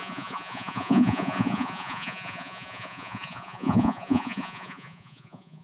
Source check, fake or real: fake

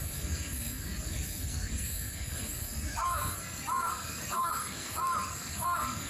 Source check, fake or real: fake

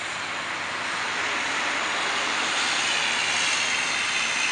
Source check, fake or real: real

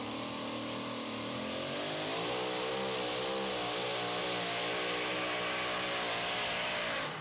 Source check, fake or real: real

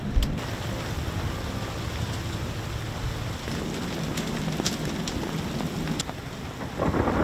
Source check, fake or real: real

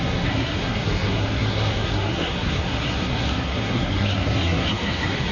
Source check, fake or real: fake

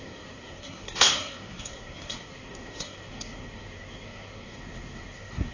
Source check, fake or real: fake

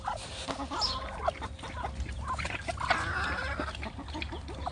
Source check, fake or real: real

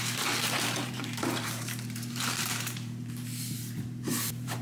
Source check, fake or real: fake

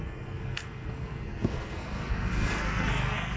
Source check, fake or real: fake